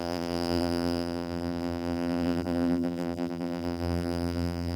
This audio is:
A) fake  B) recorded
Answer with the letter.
A